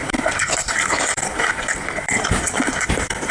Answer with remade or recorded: remade